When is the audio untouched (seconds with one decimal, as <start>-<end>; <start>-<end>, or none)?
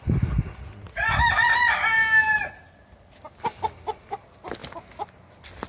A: 0.0-5.7